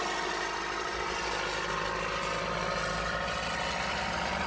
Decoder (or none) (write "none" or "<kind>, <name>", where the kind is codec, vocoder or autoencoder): none